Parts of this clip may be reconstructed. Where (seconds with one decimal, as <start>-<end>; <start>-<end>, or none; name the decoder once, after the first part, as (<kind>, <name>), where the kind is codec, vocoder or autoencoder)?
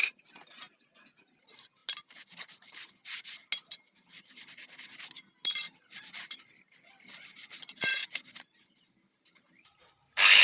7.9-9.9 (vocoder, BigVGAN v2)